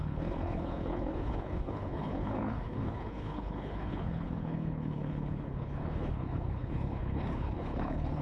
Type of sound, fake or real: fake